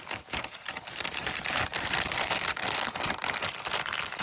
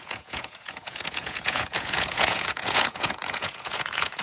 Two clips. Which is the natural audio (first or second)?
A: first